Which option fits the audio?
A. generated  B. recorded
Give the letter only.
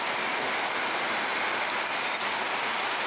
B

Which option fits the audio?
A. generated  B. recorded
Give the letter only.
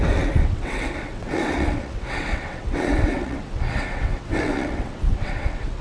A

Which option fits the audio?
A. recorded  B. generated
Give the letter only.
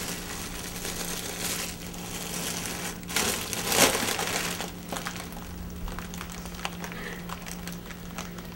A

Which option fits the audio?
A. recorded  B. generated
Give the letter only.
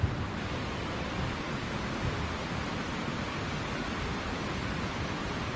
A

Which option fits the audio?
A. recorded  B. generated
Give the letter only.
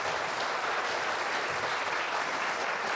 B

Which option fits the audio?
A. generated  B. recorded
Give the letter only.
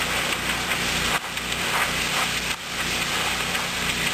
B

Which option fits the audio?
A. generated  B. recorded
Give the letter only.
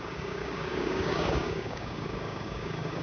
A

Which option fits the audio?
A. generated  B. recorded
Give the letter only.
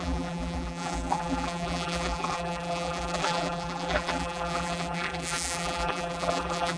A